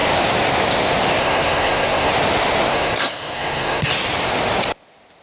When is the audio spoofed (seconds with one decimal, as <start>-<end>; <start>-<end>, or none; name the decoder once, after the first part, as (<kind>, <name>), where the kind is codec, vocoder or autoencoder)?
1.2-2.1 (codec, SNAC); 2.7-3.9